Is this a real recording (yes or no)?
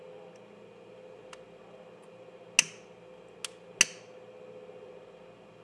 yes